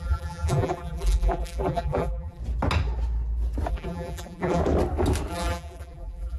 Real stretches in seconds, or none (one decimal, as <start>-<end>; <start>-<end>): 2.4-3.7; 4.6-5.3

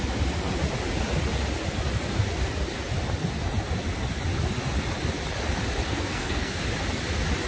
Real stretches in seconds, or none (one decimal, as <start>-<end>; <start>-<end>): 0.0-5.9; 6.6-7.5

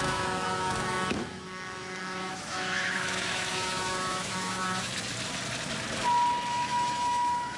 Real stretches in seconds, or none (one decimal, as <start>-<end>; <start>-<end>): 4.9-6.5

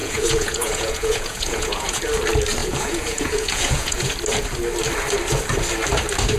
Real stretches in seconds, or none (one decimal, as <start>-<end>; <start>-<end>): 2.0-2.6; 4.1-6.4

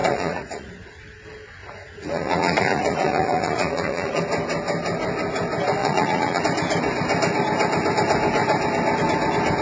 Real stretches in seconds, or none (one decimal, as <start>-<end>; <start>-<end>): 0.7-1.6; 4.2-5.8; 6.4-9.6

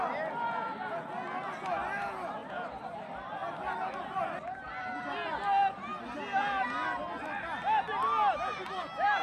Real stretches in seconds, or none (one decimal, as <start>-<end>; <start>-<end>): 0.0-9.2

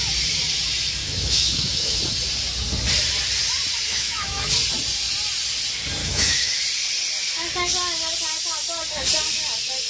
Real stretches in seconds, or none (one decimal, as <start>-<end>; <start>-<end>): 0.0-1.0; 2.0-3.9; 4.5-6.0; 6.6-9.9